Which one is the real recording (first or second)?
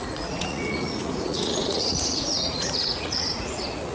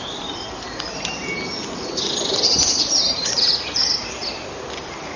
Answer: second